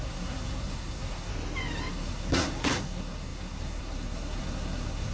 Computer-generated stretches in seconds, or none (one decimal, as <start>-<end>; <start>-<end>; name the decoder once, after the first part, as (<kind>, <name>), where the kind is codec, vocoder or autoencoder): 0.0-1.3 (codec, SNAC); 1.9-5.1